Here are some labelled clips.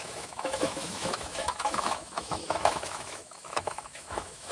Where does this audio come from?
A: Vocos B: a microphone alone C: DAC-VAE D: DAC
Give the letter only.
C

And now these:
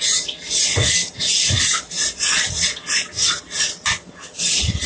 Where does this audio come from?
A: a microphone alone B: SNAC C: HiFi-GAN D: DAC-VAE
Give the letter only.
A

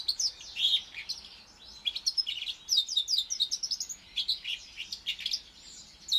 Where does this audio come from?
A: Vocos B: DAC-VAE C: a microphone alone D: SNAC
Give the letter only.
C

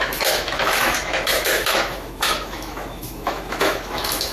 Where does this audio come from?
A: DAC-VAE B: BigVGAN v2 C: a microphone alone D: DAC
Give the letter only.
A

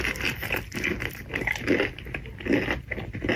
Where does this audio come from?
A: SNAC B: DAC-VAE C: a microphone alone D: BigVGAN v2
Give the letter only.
C